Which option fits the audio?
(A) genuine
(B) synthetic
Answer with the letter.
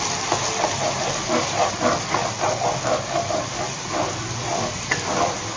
A